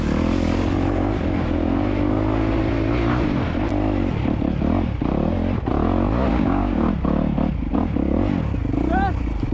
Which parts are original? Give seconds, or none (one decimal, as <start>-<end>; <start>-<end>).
0.0-6.3; 6.9-9.5